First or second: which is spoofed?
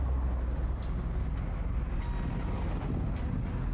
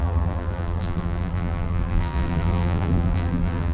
second